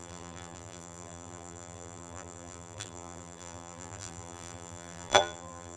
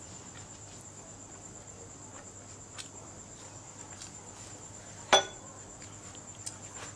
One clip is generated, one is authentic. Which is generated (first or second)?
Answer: first